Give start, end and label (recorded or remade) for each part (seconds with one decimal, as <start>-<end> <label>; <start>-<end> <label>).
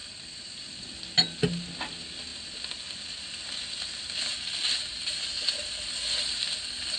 0.0-7.0 recorded